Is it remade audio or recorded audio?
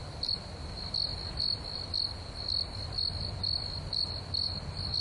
recorded